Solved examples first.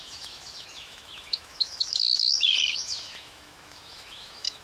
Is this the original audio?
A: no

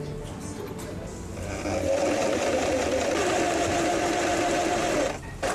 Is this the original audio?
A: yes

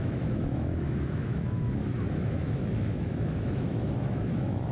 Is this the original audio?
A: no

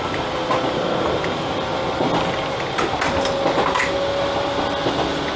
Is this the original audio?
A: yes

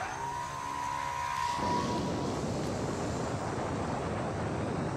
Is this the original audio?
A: yes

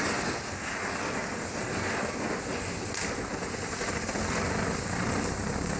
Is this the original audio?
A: yes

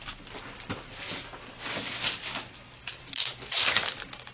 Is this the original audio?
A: yes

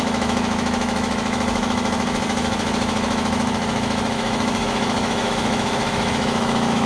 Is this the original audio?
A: no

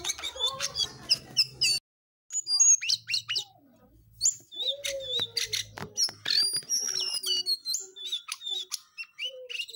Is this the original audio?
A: yes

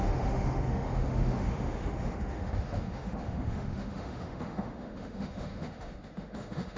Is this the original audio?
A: no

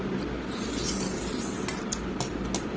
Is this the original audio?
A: yes